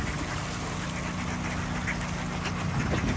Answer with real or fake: real